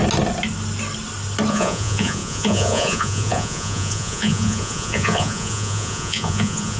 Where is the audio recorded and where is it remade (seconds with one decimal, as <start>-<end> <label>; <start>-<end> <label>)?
0.0-1.5 recorded; 1.5-6.8 remade